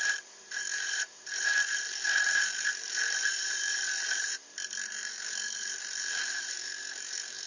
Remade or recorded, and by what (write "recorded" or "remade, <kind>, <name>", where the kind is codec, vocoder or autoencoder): remade, vocoder, BigVGAN v2